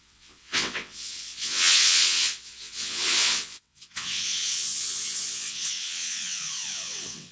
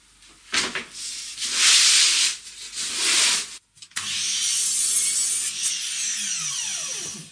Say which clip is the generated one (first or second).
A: first